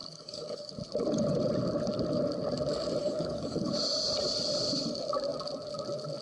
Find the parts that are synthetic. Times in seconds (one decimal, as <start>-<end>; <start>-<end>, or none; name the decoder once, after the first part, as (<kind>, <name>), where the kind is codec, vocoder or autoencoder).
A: 0.0-0.7 (codec, DAC); 3.0-3.7